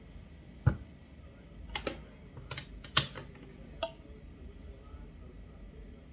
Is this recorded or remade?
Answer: recorded